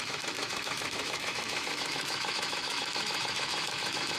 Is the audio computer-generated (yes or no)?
yes